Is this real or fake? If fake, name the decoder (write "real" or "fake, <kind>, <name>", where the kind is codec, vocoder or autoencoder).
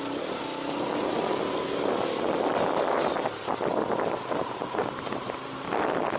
real